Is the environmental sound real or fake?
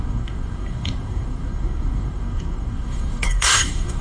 fake